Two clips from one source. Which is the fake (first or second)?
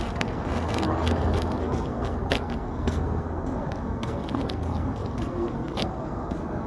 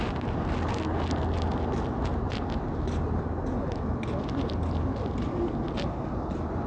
first